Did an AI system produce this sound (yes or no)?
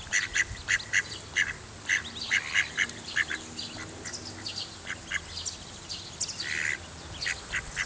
no